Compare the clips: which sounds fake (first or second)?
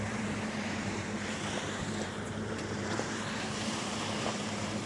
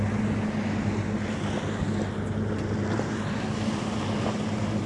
first